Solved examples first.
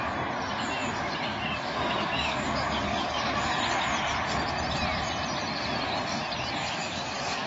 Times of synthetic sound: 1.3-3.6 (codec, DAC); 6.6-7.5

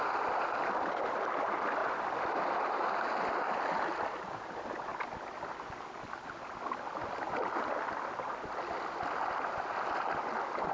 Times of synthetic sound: none

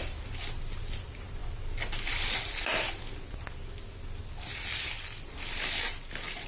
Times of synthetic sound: none

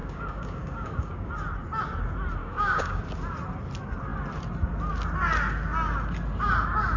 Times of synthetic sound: 0.0-1.3 (codec, DAC); 2.4-3.0

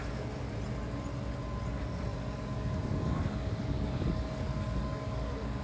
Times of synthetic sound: 2.1-5.6 (codec, DAC)

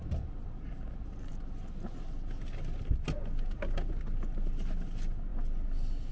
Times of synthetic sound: none

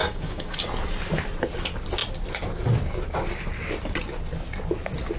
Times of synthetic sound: 0.0-0.6 (codec, DAC)

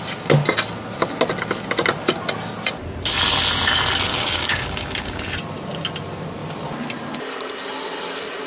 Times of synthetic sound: 4.1-5.2 (codec, DAC)